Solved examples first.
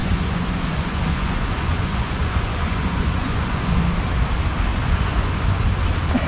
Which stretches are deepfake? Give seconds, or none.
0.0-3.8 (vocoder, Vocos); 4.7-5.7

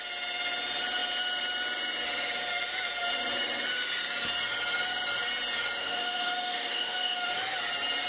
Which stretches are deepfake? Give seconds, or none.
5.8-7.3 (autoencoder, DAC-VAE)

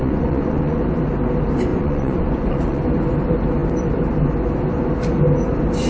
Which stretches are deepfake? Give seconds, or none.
0.0-0.8 (vocoder, Vocos); 1.7-2.8